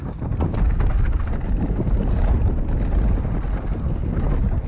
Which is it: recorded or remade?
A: recorded